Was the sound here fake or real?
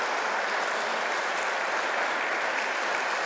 real